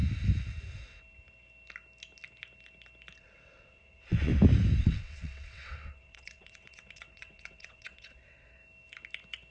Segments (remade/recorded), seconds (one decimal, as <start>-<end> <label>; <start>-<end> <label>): 0.0-3.2 recorded; 3.2-4.3 remade; 4.3-4.8 recorded; 4.8-8.6 remade; 8.6-9.5 recorded